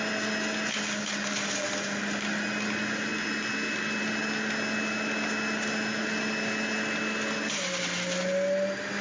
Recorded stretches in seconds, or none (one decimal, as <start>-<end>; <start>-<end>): 0.0-9.0